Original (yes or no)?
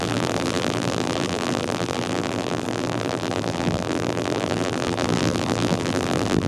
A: no